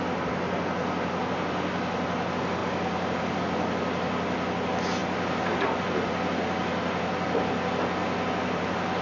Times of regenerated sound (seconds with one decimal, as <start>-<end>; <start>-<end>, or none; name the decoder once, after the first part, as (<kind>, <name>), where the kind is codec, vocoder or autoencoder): 2.6-3.4 (vocoder, BigVGAN v2); 5.0-5.5